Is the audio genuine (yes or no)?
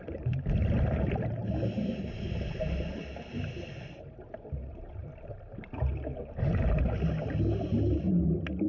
yes